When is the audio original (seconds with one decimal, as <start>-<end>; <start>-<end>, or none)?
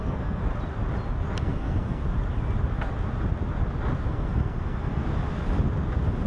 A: 0.4-1.4; 2.0-4.1; 5.0-6.3